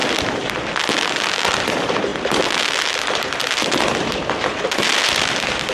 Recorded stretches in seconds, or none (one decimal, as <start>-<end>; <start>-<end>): 0.0-5.7

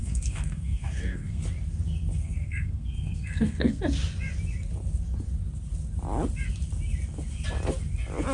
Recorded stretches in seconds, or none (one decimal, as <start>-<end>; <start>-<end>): 1.4-2.2; 3.8-8.3

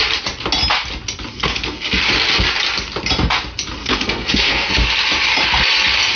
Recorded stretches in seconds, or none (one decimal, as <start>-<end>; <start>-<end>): 0.0-1.3; 2.0-3.8; 4.7-6.2

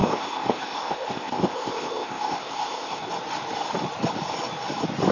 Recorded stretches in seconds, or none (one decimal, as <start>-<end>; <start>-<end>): 3.1-5.1